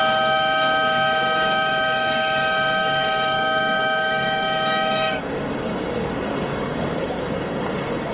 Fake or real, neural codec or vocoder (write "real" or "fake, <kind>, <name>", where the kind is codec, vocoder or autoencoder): fake, codec, DAC